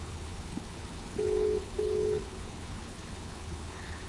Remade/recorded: remade